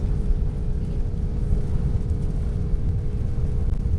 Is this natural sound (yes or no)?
yes